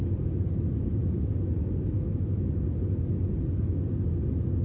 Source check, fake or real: real